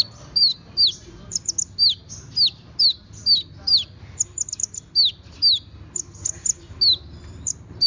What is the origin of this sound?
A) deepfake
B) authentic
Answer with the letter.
B